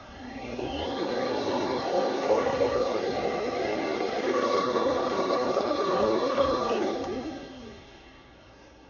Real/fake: fake